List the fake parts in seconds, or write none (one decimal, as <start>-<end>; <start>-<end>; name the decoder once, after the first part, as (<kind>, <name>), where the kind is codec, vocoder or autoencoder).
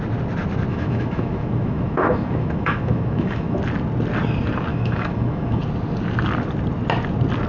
0.7-3.6 (autoencoder, DAC-VAE); 4.7-5.6